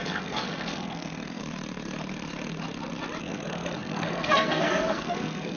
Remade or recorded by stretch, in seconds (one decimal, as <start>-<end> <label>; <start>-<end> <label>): 0.0-1.4 remade; 1.4-3.2 recorded; 3.2-5.6 remade